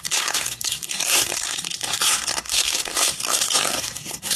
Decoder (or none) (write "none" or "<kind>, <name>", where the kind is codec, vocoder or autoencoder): codec, SNAC